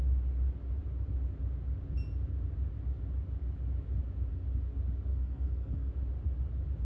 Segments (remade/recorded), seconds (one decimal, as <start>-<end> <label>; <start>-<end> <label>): 0.0-5.1 recorded; 5.1-5.9 remade; 5.9-6.8 recorded